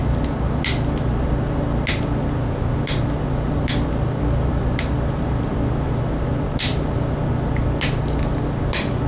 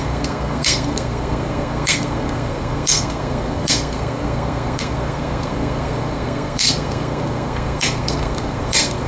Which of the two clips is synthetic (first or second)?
second